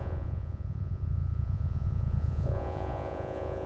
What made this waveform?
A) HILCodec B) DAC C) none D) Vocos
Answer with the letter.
D